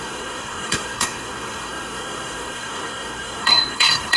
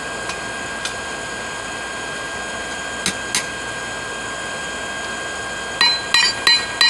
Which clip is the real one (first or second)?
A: second